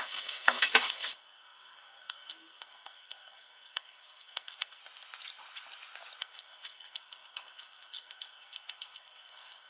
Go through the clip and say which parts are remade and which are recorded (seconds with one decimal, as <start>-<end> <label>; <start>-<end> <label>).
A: 0.0-4.8 remade; 4.8-6.2 recorded; 6.2-9.7 remade